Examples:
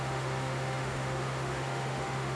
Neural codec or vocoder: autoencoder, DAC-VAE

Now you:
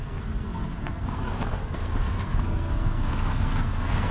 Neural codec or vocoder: codec, SNAC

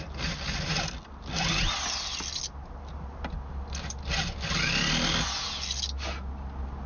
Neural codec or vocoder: none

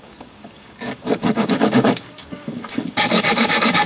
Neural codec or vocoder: codec, DAC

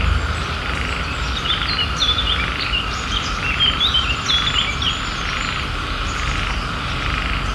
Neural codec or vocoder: none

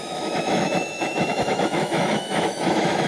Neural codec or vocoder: autoencoder, DAC-VAE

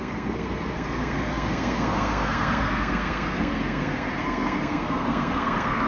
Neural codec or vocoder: codec, SNAC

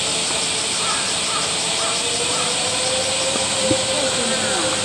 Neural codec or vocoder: none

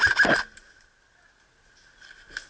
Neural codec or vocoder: none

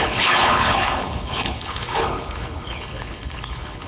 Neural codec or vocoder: codec, HILCodec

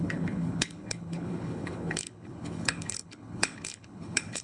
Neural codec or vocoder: codec, HILCodec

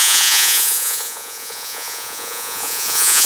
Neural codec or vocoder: vocoder, Vocos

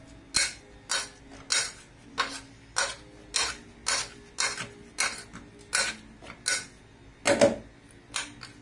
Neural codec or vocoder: none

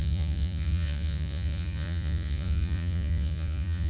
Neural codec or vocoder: vocoder, Vocos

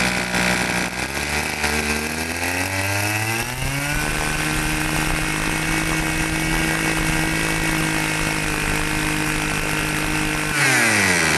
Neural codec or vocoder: none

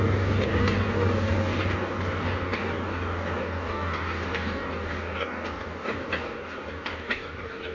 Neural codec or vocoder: codec, DAC